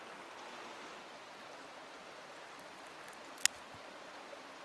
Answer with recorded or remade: recorded